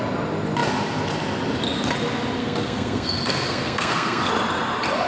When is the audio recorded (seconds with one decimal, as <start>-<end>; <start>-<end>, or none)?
0.0-2.4; 4.3-5.1